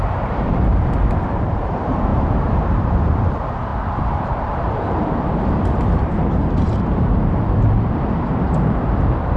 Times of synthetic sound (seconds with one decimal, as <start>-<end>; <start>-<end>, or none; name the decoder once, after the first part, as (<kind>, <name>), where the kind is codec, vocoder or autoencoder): 0.0-2.1 (vocoder, BigVGAN v2); 3.3-9.4